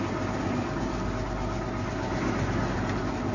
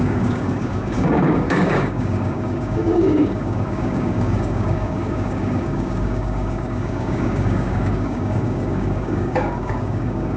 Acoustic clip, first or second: first